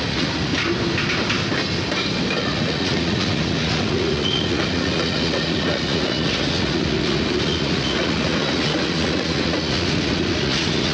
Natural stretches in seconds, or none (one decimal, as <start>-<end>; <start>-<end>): 0.5-2.4